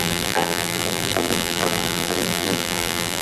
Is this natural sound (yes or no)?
no